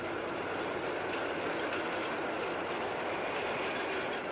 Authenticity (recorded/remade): recorded